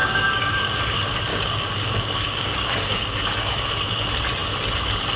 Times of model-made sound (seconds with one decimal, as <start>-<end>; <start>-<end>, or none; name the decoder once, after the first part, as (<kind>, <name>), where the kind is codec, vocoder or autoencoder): 0.0-0.8 (codec, DAC); 1.3-3.2